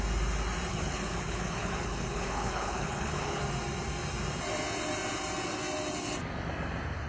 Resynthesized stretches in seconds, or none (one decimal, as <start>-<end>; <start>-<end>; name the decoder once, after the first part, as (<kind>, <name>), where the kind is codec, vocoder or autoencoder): 0.7-3.4 (codec, HILCodec)